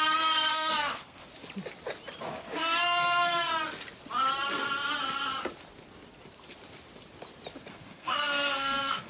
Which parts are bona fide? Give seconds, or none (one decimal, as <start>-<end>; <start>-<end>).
1.3-2.4; 3.5-7.7